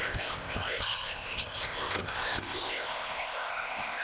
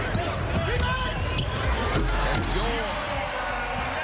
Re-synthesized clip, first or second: first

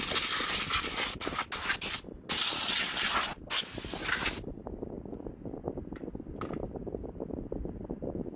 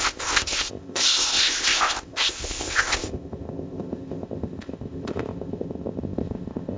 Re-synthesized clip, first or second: second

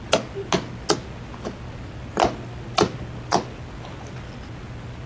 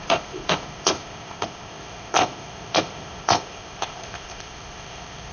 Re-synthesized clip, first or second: second